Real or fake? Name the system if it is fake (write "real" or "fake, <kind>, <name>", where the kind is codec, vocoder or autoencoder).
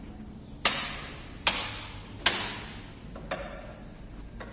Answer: real